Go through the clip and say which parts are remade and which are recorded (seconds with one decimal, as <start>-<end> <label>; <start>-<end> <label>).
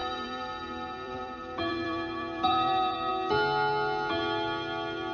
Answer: 0.0-3.1 remade; 3.1-5.1 recorded